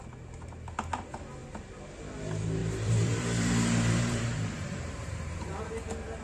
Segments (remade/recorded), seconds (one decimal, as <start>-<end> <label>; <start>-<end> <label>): 0.0-2.6 recorded; 2.6-5.6 remade; 5.6-6.2 recorded